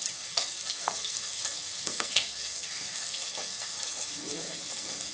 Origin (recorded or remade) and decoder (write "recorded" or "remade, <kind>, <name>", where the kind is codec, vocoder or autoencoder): remade, codec, SNAC